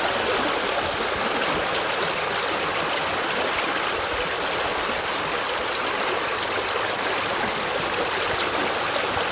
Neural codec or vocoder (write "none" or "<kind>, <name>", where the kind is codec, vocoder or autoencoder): none